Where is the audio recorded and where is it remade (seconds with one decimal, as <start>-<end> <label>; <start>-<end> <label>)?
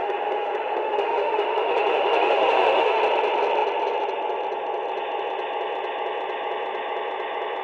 0.0-3.0 remade; 3.0-7.6 recorded